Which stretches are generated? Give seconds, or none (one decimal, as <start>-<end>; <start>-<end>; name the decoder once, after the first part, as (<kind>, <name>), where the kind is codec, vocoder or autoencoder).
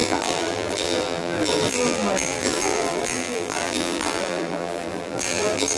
0.0-5.8 (vocoder, BigVGAN v2)